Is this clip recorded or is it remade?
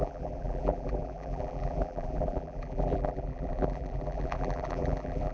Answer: remade